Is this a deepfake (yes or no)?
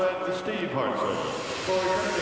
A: no